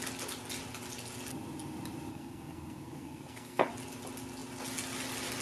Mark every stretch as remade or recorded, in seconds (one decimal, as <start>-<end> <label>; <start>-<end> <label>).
0.0-2.1 recorded; 2.1-3.7 remade; 3.7-5.4 recorded